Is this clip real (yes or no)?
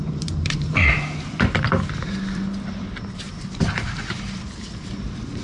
no